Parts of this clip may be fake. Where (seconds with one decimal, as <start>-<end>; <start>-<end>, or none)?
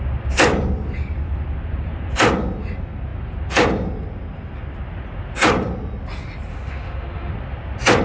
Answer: 6.5-7.3